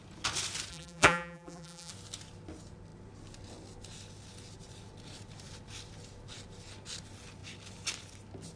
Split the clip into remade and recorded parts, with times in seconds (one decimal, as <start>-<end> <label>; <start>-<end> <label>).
0.0-0.7 recorded; 0.7-1.9 remade; 1.9-8.6 recorded